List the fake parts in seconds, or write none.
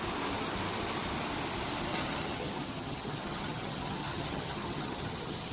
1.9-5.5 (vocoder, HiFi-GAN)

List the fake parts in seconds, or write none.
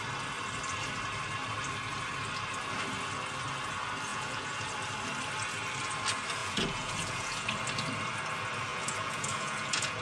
4.1-4.6 (vocoder, Vocos); 6.4-7.5; 8.7-10.0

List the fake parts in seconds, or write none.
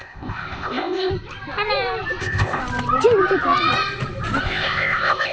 0.0-1.1 (codec, ZipCodec); 2.2-2.6; 4.4-5.3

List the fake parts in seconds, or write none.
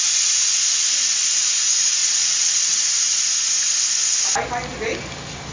2.0-2.9 (vocoder, WaveNeXt)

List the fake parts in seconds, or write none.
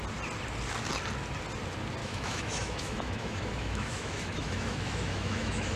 2.0-5.8 (autoencoder, DAC-VAE)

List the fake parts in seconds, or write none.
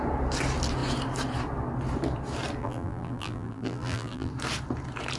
2.6-4.3 (vocoder, BigVGAN v2)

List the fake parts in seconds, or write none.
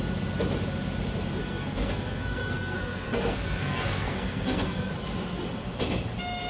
1.4-4.9 (codec, SNAC)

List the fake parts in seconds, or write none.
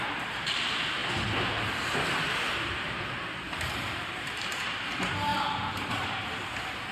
0.0-1.0 (vocoder, BigVGAN v2); 2.2-6.9